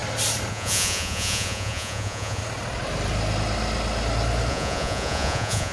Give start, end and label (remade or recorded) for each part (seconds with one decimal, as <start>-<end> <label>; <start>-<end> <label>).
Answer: 0.0-0.5 recorded; 0.5-2.4 remade; 2.4-4.5 recorded; 4.5-5.7 remade